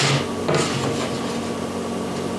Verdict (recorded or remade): recorded